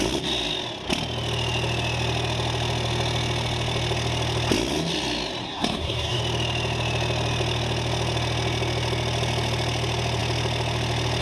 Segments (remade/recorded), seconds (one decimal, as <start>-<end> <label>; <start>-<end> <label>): 0.0-5.4 recorded; 5.4-6.2 remade; 6.2-11.2 recorded